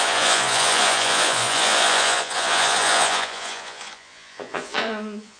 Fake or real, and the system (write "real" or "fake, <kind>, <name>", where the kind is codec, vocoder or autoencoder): fake, vocoder, Vocos